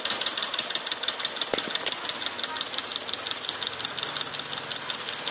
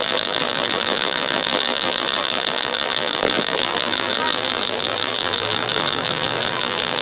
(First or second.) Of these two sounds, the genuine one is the first